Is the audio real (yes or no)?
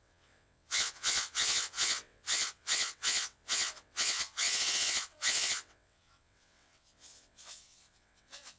no